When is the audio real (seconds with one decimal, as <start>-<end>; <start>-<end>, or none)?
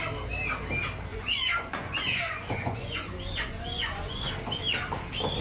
0.0-1.1; 4.3-5.4